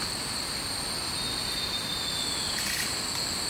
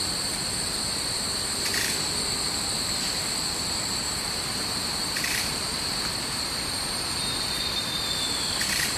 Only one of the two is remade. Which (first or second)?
second